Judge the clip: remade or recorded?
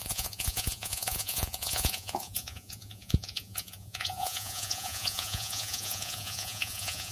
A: remade